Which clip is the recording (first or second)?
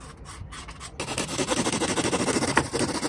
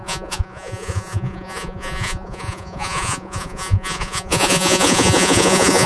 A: first